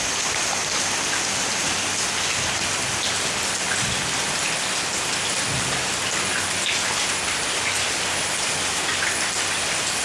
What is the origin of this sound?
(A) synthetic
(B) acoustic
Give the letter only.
B